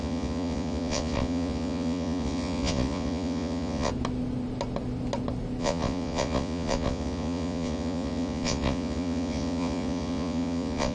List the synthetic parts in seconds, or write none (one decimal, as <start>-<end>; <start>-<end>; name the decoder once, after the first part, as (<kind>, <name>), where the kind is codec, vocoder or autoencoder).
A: 0.0-3.9 (vocoder, Vocos); 5.6-10.9